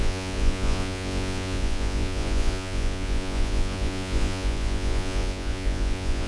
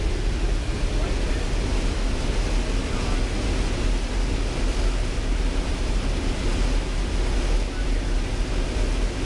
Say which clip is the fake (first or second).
first